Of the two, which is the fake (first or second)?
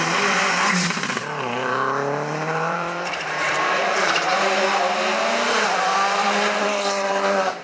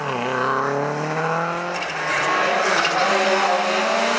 first